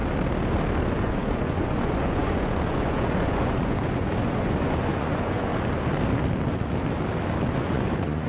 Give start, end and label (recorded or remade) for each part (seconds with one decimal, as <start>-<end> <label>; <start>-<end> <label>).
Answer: 0.0-0.9 recorded; 0.9-5.5 remade; 5.5-7.5 recorded; 7.5-8.3 remade

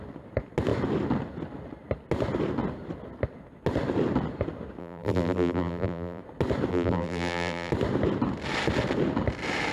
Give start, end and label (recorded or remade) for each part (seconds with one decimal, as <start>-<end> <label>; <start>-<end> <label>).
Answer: 0.0-4.8 recorded; 4.8-6.2 remade; 6.2-6.7 recorded; 6.7-7.7 remade; 7.7-9.7 recorded

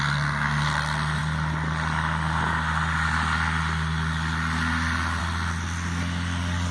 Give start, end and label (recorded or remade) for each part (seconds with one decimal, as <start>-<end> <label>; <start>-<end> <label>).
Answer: 0.0-6.7 recorded

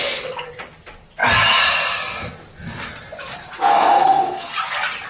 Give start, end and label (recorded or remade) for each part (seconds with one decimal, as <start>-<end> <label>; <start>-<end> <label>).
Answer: 0.0-3.7 recorded; 3.7-4.5 remade; 4.5-5.1 recorded

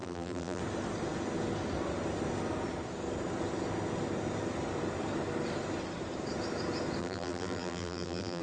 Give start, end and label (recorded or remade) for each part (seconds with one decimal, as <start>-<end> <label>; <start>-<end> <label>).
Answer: 0.0-0.6 remade; 0.6-7.0 recorded; 7.0-8.4 remade